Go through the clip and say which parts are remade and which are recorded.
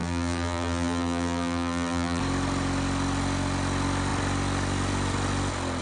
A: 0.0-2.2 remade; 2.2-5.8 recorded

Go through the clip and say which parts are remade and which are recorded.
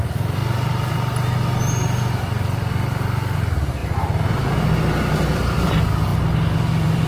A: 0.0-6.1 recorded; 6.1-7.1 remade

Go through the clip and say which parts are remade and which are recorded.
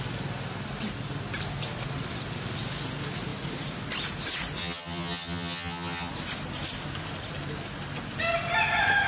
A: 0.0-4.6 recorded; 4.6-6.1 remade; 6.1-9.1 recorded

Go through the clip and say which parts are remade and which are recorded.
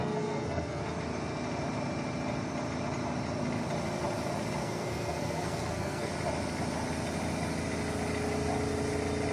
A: 0.0-0.8 remade; 0.8-4.6 recorded; 4.6-6.1 remade; 6.1-9.3 recorded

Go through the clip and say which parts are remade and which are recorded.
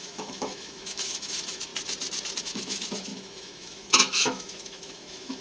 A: 0.0-1.7 remade; 1.7-2.4 recorded; 2.4-5.4 remade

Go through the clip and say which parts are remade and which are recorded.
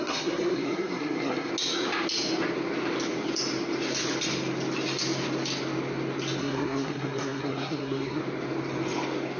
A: 0.0-1.5 remade; 1.5-6.4 recorded; 6.4-8.2 remade; 8.2-9.4 recorded